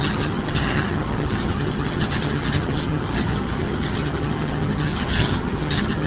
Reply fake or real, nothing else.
fake